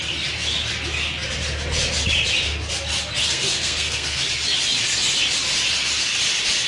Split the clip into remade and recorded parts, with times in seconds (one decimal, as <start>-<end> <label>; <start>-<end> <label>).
0.0-3.2 recorded; 3.2-4.2 remade; 4.2-6.7 recorded